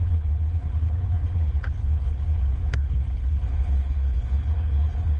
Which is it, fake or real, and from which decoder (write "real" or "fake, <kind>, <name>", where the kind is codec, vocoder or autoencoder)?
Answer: fake, codec, HILCodec